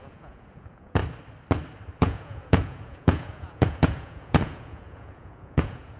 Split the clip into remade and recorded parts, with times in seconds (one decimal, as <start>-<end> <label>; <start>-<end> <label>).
0.0-1.0 remade; 1.0-2.0 recorded; 2.0-6.0 remade

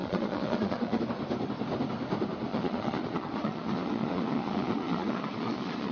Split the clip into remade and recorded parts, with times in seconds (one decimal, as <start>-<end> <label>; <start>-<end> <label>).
0.0-1.0 remade; 1.0-2.5 recorded; 2.5-5.9 remade